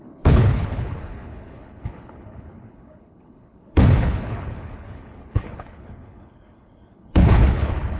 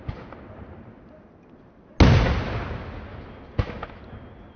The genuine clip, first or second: second